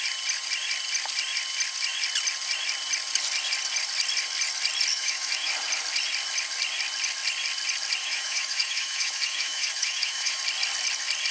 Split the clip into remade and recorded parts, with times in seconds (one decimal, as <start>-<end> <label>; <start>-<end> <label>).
0.0-4.9 recorded; 4.9-5.5 remade; 5.5-8.0 recorded; 8.0-10.4 remade; 10.4-11.3 recorded